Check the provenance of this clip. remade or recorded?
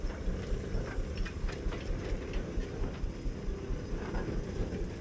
recorded